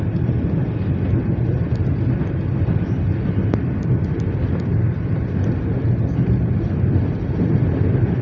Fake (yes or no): no